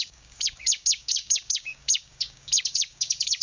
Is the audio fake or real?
fake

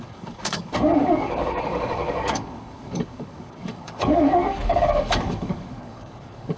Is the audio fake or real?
fake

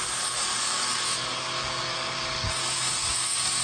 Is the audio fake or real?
fake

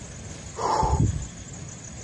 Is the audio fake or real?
real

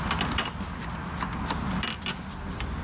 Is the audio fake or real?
real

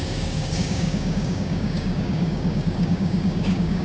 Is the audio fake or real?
fake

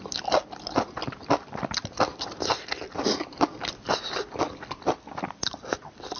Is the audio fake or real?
real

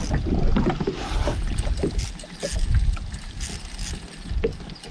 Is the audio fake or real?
real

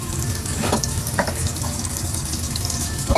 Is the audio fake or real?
fake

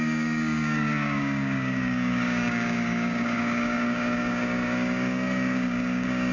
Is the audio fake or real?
fake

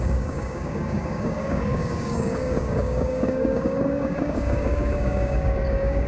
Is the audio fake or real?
fake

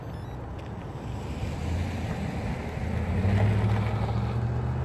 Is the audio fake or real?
real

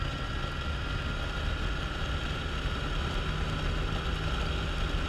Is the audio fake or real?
real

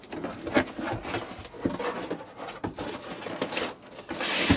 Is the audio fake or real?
real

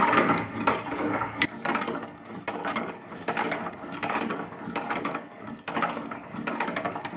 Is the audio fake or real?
fake